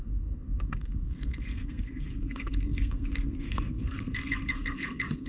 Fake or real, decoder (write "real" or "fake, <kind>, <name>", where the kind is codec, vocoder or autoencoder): fake, codec, SNAC